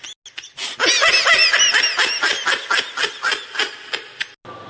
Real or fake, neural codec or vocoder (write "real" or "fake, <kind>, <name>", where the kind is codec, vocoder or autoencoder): real